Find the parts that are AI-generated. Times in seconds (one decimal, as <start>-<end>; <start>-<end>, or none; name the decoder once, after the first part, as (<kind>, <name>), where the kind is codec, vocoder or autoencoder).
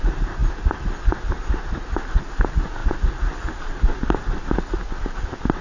none